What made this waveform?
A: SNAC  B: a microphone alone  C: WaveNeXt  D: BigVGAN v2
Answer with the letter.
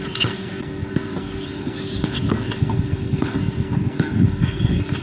A